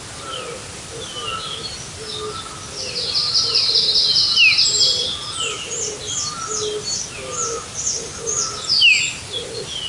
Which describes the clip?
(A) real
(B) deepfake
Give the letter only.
A